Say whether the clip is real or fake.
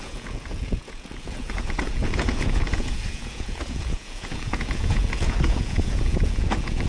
fake